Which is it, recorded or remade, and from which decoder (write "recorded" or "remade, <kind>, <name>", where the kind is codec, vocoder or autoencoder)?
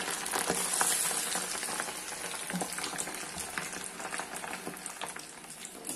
recorded